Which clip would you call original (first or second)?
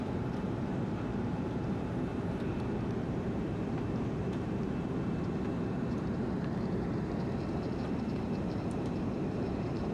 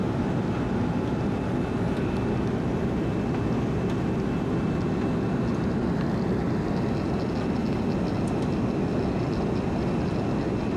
second